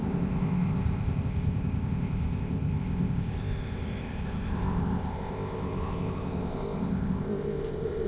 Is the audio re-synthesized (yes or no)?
yes